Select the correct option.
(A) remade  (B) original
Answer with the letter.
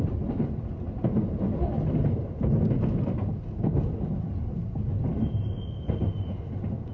B